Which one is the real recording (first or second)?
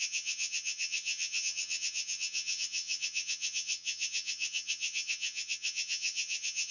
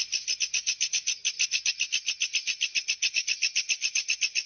second